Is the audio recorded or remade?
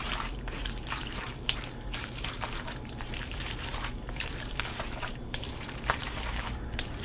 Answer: remade